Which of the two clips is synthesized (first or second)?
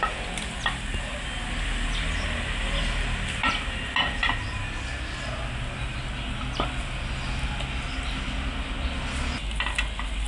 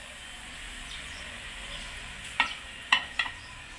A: second